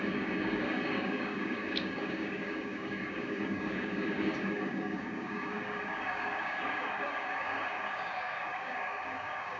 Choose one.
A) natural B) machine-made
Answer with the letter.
B